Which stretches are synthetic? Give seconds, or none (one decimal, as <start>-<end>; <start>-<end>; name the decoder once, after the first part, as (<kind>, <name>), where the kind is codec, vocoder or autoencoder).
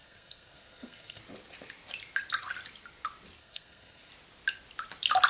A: 0.0-1.2 (codec, SNAC); 3.4-4.1